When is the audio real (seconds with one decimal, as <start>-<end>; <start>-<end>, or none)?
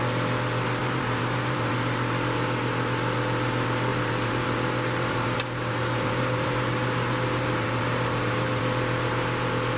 0.0-0.8; 1.7-3.9; 8.6-9.8